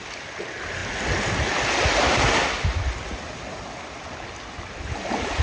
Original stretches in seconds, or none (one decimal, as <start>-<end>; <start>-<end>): 0.0-5.4